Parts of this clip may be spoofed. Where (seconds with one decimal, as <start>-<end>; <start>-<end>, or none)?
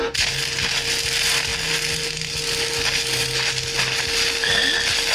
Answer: 1.5-4.6